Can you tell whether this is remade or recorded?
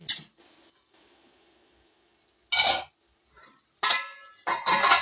recorded